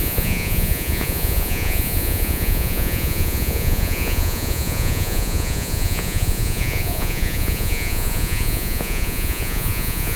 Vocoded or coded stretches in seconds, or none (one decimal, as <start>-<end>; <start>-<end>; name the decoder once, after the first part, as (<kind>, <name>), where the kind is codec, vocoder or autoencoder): 0.0-10.2 (vocoder, Vocos)